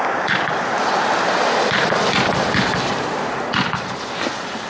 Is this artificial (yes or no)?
no